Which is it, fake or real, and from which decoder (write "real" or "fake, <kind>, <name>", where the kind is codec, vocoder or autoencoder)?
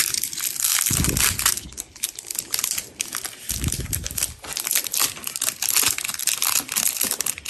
real